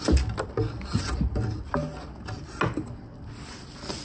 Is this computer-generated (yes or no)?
no